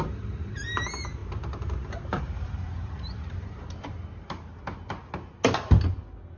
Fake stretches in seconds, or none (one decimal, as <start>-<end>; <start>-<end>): 0.0-4.5; 5.8-6.4